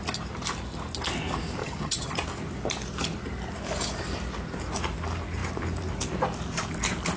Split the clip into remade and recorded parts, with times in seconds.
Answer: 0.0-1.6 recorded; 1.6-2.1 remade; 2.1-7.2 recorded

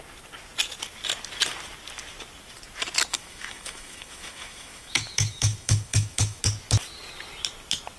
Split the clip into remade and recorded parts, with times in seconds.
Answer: 0.0-3.1 recorded; 3.1-6.4 remade; 6.4-8.0 recorded

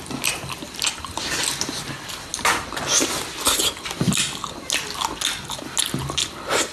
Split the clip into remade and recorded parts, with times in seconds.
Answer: 0.0-6.7 recorded

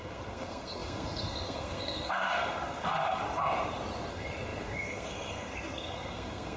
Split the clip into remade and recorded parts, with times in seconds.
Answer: 0.0-3.2 remade; 3.2-4.1 recorded; 4.1-6.6 remade

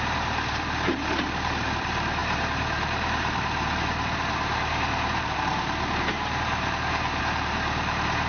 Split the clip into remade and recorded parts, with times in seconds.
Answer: 0.0-8.3 remade